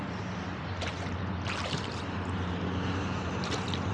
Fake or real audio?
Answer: fake